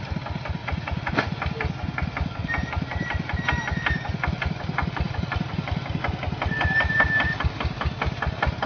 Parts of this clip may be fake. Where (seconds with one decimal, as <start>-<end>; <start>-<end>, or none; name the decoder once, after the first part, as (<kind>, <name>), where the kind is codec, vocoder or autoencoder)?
0.6-1.1 (vocoder, Vocos)